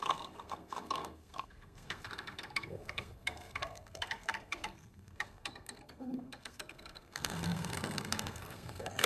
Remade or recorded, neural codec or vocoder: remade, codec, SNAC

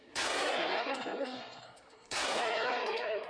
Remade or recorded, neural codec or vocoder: remade, codec, SNAC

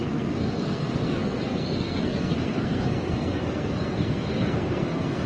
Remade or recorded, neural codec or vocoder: remade, codec, SNAC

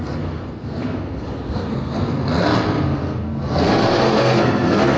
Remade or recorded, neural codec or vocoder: remade, codec, SNAC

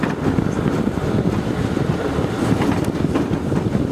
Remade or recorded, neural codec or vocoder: recorded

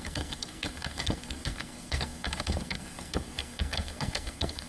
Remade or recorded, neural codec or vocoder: remade, codec, SNAC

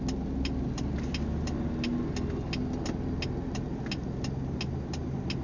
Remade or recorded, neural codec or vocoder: recorded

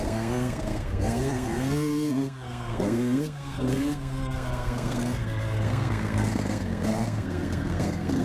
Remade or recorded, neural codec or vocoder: remade, codec, SNAC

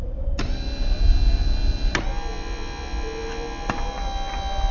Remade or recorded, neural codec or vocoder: recorded